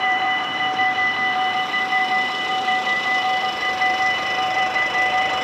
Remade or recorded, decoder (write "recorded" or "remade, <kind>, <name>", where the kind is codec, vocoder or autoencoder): remade, vocoder, BigVGAN v2